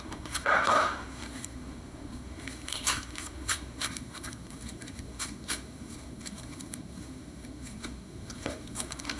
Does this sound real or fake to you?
fake